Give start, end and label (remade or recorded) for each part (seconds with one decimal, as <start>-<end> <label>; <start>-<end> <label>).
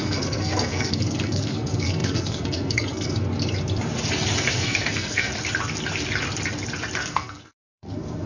0.0-3.2 remade; 3.2-4.5 recorded; 4.5-5.3 remade; 5.3-7.0 recorded; 7.0-8.3 remade